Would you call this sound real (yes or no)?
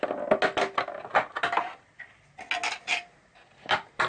yes